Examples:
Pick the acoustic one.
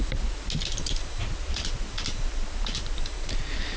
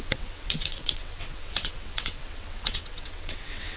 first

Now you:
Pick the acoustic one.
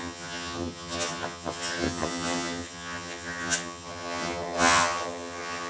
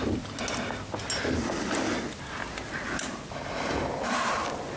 second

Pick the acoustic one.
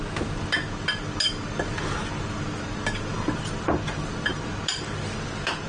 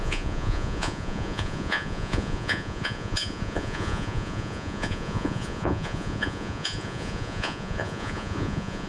first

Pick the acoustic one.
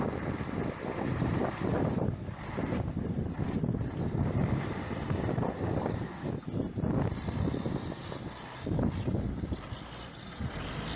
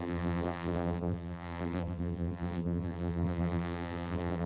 first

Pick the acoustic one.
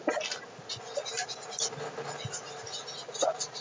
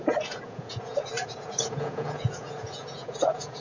first